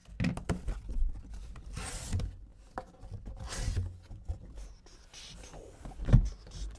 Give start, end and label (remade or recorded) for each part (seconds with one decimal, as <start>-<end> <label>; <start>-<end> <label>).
0.0-6.8 recorded